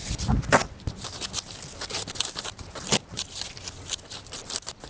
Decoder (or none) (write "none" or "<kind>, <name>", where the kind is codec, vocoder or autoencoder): vocoder, BigVGAN v2